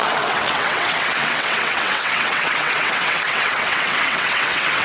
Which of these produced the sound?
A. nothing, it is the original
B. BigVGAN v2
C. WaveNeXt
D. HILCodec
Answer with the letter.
C